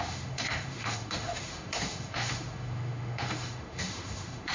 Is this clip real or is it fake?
fake